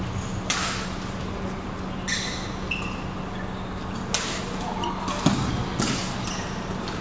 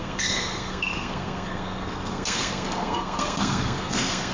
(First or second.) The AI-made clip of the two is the second